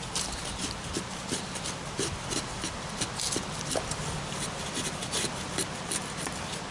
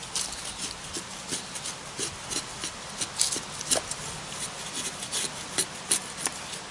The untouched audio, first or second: second